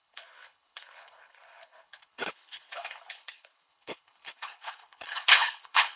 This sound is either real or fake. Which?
fake